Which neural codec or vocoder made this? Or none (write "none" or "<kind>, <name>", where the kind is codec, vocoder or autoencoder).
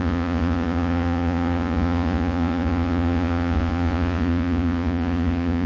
vocoder, Vocos